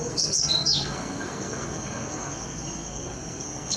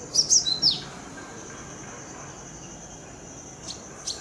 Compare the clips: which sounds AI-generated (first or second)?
first